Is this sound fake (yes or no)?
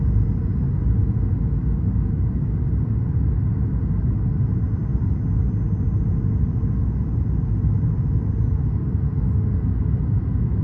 no